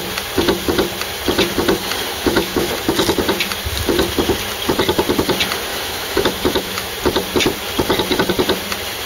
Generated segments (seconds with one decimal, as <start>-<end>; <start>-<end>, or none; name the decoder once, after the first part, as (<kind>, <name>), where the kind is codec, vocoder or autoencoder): 2.1-2.7 (autoencoder, DAC-VAE); 5.7-6.9